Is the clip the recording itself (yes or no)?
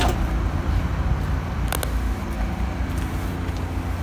yes